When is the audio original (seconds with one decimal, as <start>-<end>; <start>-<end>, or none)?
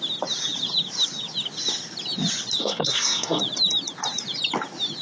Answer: 0.0-2.6; 3.4-5.0